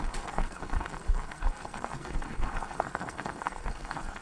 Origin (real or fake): fake